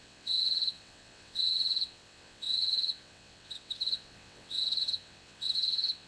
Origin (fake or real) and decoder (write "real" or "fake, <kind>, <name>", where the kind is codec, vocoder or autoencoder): fake, vocoder, WaveNeXt